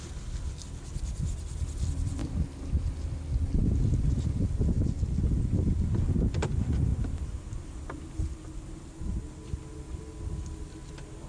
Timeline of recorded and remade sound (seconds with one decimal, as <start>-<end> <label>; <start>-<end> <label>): 0.0-8.2 recorded; 8.2-9.6 remade; 9.6-11.3 recorded